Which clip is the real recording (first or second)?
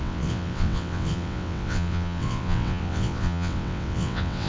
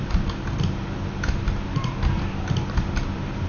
second